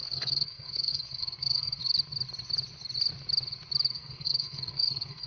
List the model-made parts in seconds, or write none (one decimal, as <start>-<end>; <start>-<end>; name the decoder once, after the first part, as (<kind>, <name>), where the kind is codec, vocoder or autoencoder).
0.0-1.8 (codec, SNAC); 3.9-5.3